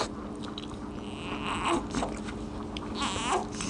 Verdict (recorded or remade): recorded